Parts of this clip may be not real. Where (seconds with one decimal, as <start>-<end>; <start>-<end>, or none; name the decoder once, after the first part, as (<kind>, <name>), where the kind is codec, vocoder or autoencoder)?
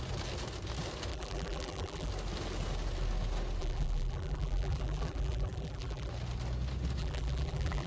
1.1-2.1 (vocoder, BigVGAN v2); 3.6-6.1; 7.0-7.9